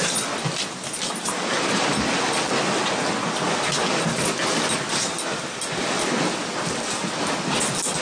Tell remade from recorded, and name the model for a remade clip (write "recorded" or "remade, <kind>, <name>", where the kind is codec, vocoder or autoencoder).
recorded